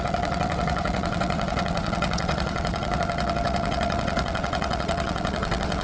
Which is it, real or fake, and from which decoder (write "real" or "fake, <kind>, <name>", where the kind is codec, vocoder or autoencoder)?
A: fake, vocoder, WaveNeXt